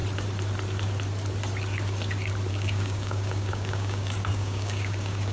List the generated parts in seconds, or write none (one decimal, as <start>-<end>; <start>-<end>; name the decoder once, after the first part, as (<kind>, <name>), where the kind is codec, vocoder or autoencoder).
2.5-5.3 (codec, DAC)